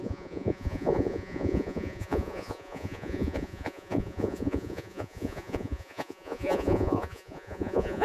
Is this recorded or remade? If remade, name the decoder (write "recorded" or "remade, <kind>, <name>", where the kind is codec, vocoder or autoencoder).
remade, vocoder, Vocos